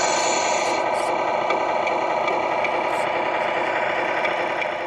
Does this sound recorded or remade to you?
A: recorded